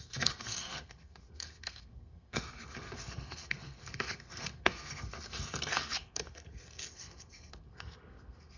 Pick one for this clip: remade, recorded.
remade